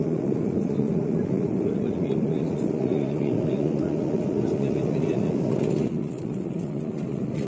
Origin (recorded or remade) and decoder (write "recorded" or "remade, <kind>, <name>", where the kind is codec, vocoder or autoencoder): remade, vocoder, Vocos